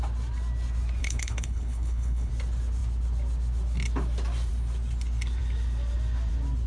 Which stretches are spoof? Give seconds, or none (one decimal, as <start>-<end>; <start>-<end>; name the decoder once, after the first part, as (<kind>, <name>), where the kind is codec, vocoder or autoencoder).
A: 1.0-2.3 (codec, HILCodec)